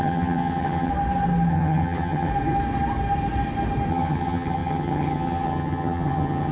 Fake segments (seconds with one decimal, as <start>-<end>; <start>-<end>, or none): 0.0-0.9; 1.5-2.3; 3.9-6.5